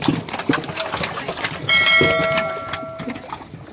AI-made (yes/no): no